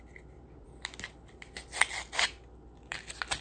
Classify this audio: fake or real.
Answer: real